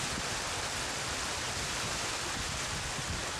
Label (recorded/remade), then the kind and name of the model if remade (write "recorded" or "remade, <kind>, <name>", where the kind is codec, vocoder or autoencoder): recorded